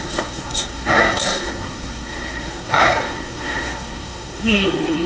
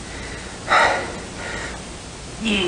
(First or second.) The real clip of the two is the second